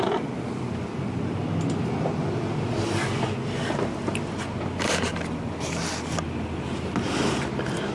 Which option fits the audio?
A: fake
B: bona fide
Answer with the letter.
B